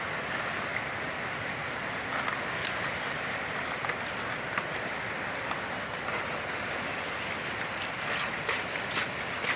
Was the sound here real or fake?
real